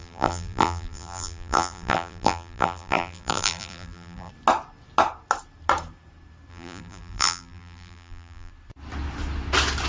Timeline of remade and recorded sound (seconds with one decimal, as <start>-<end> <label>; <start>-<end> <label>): 0.0-4.3 remade; 4.3-6.5 recorded; 6.5-8.5 remade; 8.5-9.9 recorded